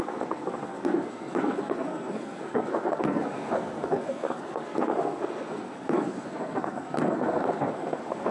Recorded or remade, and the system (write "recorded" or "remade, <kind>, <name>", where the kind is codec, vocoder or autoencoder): remade, codec, SNAC